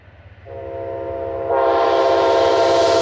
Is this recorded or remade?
recorded